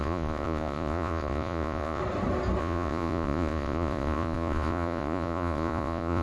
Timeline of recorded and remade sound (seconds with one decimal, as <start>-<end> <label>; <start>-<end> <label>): 0.0-2.0 remade; 2.0-2.6 recorded; 2.6-6.2 remade